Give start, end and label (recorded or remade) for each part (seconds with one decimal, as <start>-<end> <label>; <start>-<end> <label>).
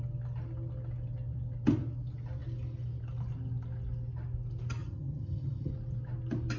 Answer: 0.0-4.8 recorded; 4.8-5.7 remade; 5.7-6.6 recorded